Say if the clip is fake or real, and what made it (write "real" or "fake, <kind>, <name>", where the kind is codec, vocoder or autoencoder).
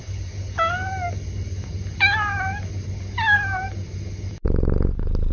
real